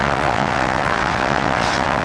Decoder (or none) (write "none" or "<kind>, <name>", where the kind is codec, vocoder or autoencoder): vocoder, WaveNeXt